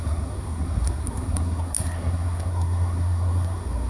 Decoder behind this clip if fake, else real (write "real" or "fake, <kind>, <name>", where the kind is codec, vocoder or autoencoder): fake, codec, SNAC